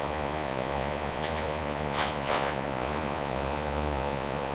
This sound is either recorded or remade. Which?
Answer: remade